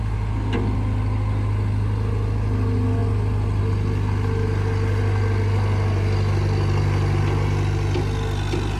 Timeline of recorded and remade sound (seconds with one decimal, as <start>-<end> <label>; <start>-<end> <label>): 0.0-8.8 recorded